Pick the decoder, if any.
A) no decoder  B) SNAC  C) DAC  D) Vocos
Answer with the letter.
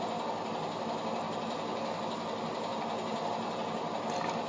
A